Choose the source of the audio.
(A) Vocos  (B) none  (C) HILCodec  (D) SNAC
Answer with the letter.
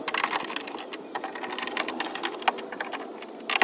B